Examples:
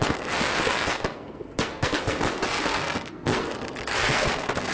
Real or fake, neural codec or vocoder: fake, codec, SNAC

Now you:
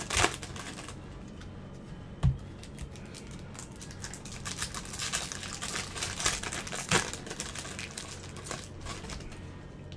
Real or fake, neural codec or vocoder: real